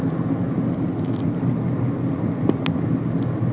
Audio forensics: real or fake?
real